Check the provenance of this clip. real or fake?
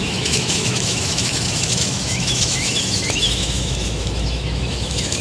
fake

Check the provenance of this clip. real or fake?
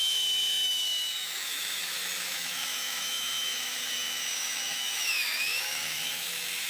fake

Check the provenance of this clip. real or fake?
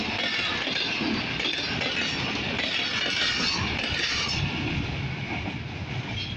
real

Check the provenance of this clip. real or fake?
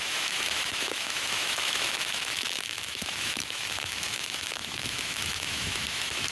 fake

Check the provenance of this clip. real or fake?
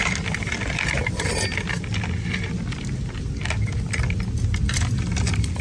real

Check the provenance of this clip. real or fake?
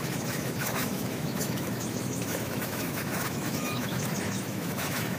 fake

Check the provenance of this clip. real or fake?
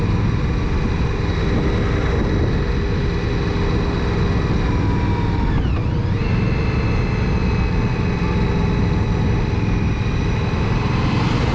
real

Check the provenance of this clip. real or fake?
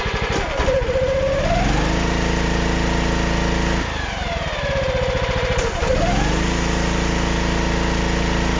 real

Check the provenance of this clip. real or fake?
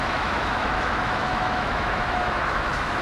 fake